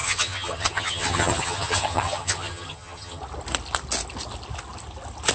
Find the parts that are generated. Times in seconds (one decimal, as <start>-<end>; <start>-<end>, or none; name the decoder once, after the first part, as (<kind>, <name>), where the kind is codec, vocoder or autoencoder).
0.0-3.2 (vocoder, HiFi-GAN)